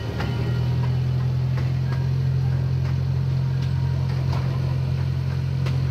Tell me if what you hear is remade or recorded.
recorded